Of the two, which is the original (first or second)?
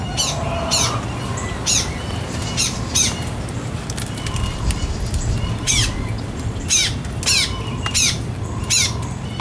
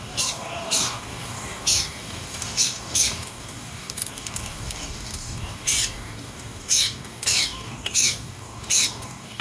first